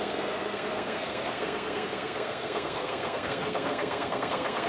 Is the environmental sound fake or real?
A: fake